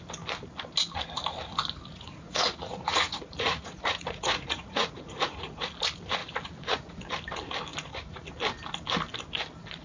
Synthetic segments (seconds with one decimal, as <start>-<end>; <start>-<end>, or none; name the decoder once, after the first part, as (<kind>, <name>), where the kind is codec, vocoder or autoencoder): 1.9-5.7 (vocoder, Vocos); 6.2-6.9; 7.7-8.3